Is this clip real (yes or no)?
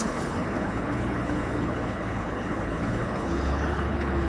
no